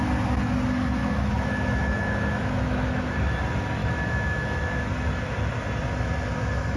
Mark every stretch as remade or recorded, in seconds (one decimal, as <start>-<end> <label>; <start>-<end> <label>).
0.0-1.0 recorded; 1.0-3.4 remade; 3.4-3.8 recorded; 3.8-4.8 remade; 4.8-6.8 recorded